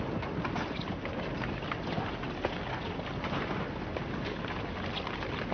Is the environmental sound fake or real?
real